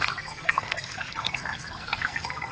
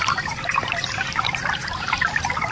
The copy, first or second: first